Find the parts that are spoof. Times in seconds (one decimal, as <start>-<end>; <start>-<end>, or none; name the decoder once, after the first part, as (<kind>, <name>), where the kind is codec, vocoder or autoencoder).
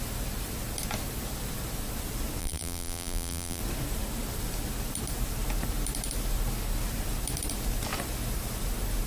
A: 2.4-3.6 (vocoder, BigVGAN v2)